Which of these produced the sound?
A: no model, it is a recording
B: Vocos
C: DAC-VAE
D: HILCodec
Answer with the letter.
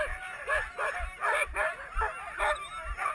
A